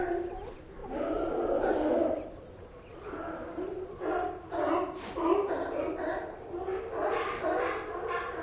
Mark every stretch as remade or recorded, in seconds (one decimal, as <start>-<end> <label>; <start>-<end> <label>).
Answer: 0.0-8.4 recorded